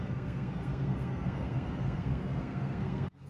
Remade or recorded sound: remade